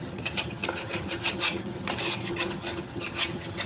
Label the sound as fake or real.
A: fake